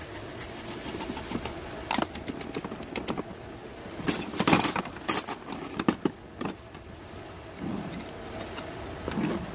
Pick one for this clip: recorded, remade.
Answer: recorded